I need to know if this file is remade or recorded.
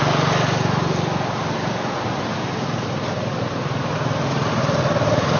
recorded